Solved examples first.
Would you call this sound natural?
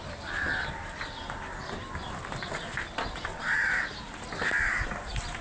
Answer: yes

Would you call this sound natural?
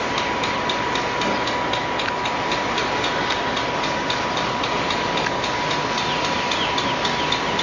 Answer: yes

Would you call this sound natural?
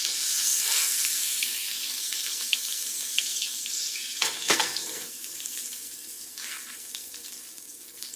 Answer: no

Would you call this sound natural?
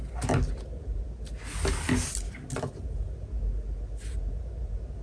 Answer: yes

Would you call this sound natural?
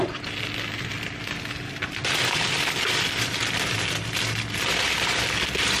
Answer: yes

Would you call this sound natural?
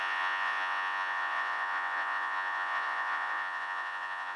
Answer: no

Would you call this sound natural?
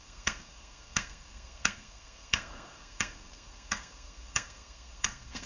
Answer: no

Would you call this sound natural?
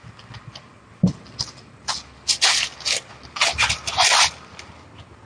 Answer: yes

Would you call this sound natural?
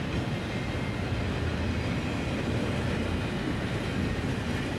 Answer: yes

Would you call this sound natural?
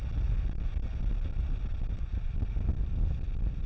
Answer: yes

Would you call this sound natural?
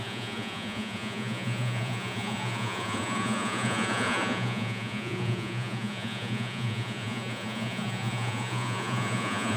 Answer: no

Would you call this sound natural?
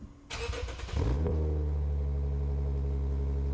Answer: yes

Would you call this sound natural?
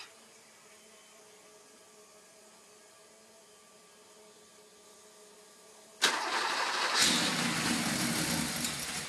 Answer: yes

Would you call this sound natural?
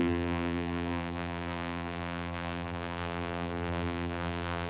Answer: no